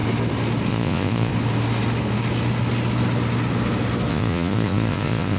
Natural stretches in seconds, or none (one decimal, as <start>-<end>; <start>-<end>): 0.0-0.7; 1.3-4.1

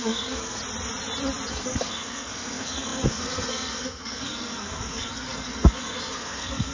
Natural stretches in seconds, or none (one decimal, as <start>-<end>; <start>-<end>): 0.6-1.5

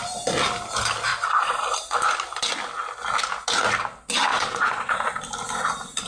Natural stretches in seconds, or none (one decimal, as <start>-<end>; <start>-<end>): 0.0-1.1; 1.6-4.3; 5.2-6.1

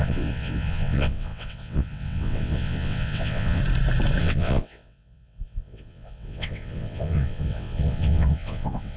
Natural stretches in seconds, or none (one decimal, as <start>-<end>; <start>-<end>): 3.6-4.2

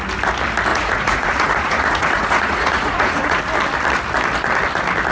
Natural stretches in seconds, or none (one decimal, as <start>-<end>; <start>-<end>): 0.0-0.7; 3.4-5.1

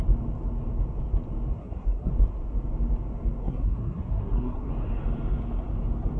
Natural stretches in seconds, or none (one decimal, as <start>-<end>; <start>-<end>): 0.0-1.6; 2.1-3.4; 4.7-6.2

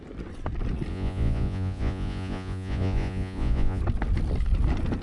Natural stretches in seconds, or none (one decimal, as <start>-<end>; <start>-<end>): 0.0-0.9; 3.8-5.0

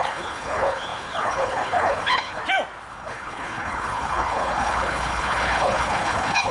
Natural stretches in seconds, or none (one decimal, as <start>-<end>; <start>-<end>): 2.4-2.9